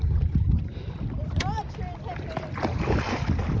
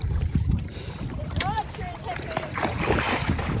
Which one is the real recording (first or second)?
first